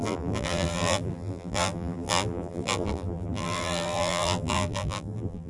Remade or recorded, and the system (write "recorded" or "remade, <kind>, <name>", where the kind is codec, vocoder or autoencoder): remade, vocoder, BigVGAN v2